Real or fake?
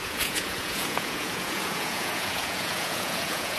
fake